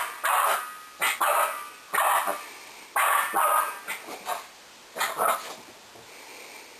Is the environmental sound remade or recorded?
recorded